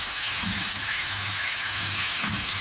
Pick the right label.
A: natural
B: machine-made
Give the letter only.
B